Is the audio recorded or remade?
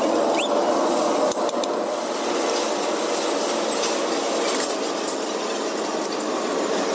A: recorded